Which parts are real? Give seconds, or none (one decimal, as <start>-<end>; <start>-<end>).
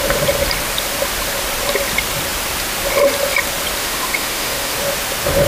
0.0-3.8; 4.7-5.5